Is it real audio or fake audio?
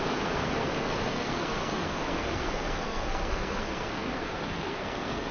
fake